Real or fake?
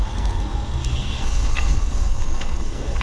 fake